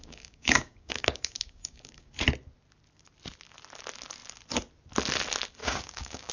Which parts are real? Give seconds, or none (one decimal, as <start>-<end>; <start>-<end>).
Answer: 2.1-5.6